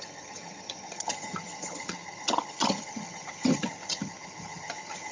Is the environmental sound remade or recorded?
remade